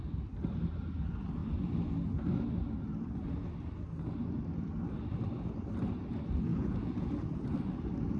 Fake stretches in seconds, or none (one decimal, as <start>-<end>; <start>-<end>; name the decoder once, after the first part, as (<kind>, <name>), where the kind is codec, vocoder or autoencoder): 6.5-7.1 (vocoder, Vocos)